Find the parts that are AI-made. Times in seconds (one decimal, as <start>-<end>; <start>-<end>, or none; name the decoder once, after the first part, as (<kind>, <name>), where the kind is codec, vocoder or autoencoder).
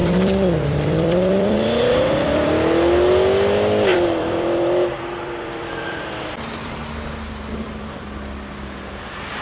0.0-2.5 (vocoder, BigVGAN v2); 3.9-6.8